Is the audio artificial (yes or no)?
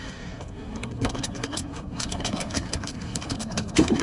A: yes